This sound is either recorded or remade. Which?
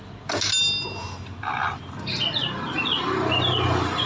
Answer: recorded